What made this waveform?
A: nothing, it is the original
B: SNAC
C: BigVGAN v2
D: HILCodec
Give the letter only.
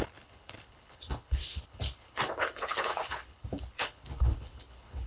D